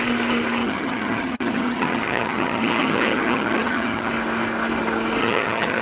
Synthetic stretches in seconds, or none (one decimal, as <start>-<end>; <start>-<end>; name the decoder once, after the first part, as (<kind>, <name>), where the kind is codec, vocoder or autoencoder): 0.6-4.1 (vocoder, HiFi-GAN); 5.2-5.8